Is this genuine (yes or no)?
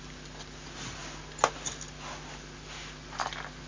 yes